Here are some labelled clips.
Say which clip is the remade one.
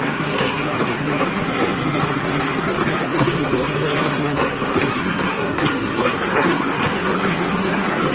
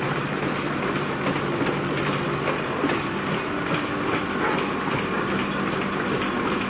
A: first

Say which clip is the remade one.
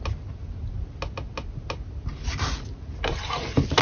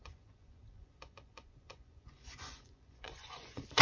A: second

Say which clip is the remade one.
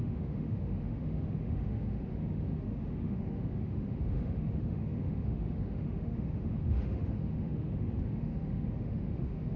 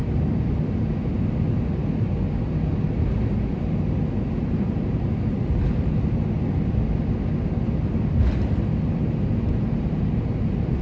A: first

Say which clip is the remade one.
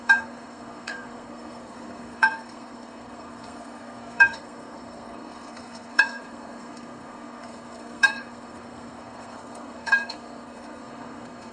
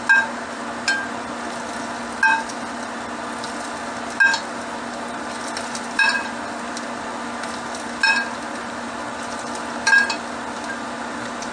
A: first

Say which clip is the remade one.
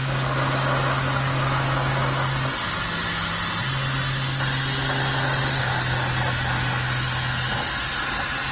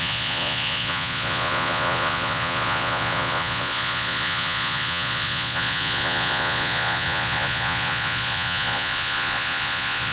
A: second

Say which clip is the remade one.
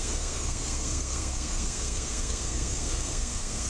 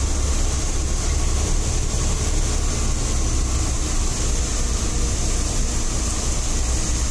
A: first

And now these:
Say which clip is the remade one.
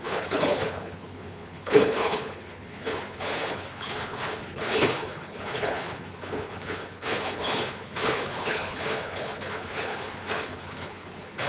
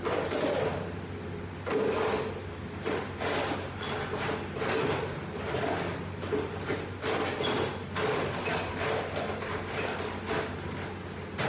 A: first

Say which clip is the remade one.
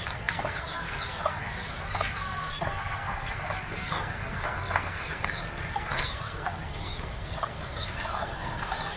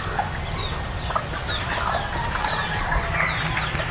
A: first